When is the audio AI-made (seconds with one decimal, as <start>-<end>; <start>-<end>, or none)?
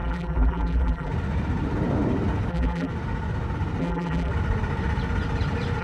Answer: 0.0-1.1; 2.5-2.9; 3.8-4.3